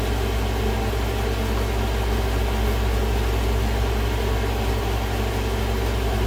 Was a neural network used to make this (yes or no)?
no